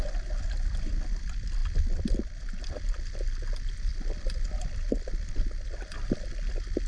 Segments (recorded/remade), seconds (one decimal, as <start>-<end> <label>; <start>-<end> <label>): 0.0-6.9 recorded